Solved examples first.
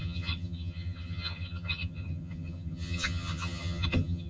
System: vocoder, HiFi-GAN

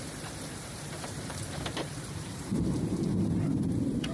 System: vocoder, BigVGAN v2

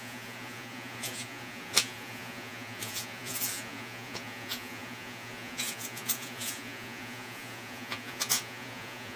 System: vocoder, Vocos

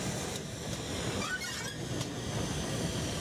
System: none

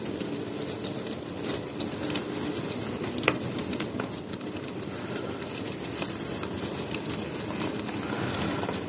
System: none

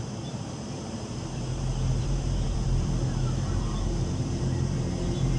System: vocoder, BigVGAN v2